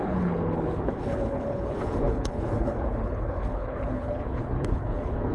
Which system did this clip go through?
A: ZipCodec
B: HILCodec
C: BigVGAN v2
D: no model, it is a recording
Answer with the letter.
B